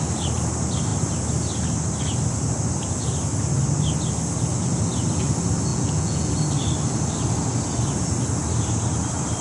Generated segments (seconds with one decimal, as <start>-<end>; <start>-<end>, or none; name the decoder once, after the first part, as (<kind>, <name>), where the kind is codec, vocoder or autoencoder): 5.7-6.3 (vocoder, Vocos)